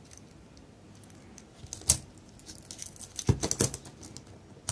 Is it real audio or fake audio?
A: real